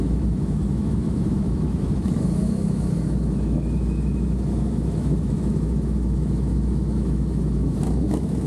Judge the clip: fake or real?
fake